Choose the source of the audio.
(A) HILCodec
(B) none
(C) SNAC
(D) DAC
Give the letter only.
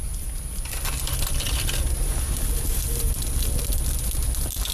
B